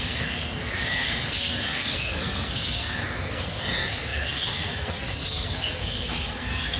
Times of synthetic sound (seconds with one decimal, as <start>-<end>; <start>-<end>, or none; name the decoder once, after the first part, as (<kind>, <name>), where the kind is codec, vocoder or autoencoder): 0.0-6.8 (codec, SNAC)